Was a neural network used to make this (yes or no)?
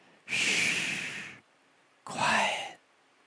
no